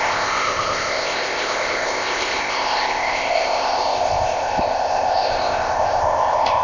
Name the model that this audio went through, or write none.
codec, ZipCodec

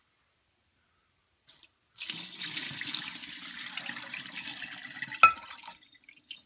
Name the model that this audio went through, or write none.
none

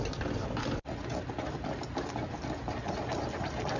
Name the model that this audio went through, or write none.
none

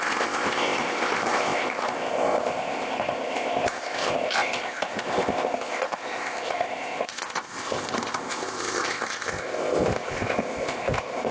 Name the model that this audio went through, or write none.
codec, ZipCodec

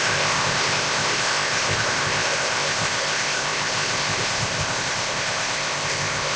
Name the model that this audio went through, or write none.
codec, ZipCodec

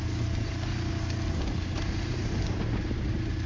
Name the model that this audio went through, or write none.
none